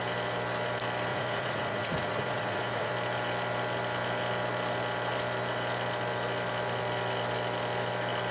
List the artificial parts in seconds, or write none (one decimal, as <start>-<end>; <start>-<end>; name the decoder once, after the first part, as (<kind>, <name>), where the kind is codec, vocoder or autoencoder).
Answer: 1.1-2.9 (vocoder, Vocos)